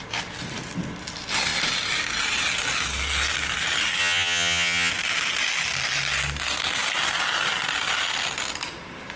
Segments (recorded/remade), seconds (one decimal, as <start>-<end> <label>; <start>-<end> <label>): 0.0-4.0 recorded; 4.0-4.9 remade; 4.9-9.2 recorded